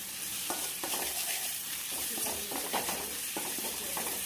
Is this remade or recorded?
remade